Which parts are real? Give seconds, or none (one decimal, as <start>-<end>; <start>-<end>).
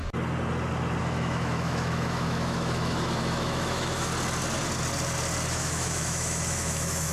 0.0-1.0; 4.1-5.5